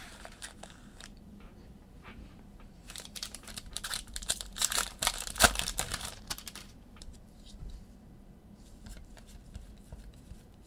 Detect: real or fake fake